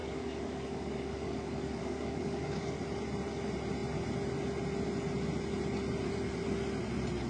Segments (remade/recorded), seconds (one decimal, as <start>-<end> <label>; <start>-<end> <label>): 0.0-2.8 remade; 2.8-7.3 recorded